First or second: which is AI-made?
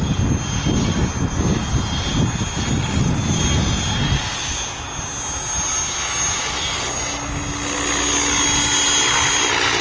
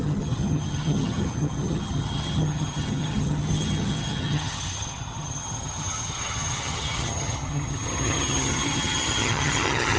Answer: second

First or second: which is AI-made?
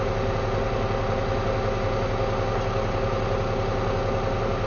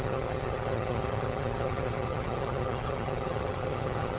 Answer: second